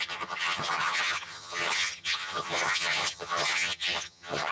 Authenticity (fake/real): fake